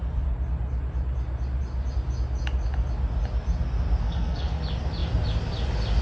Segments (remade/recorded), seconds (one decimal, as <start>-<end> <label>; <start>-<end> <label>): 0.0-4.0 recorded; 4.0-4.6 remade; 4.6-6.0 recorded